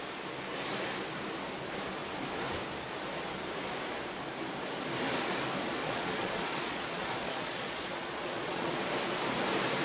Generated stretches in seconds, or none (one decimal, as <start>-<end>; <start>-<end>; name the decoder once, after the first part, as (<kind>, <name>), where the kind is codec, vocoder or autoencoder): 5.8-8.8 (vocoder, Vocos)

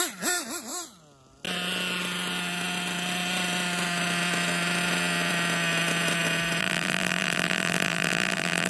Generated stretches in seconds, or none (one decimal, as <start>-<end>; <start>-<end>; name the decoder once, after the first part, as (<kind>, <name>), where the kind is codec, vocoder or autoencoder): 6.6-8.7 (vocoder, BigVGAN v2)

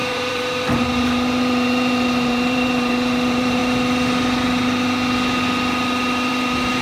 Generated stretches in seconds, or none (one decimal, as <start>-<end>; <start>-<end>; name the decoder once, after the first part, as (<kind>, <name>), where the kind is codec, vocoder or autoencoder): 0.0-3.6 (vocoder, BigVGAN v2); 6.3-6.8